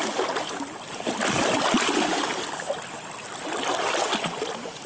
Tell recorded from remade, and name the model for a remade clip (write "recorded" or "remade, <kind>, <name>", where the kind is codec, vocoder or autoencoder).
recorded